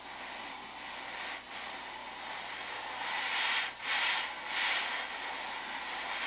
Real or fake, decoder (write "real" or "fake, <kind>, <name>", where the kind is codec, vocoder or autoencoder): real